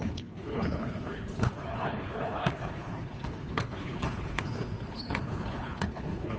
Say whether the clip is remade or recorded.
remade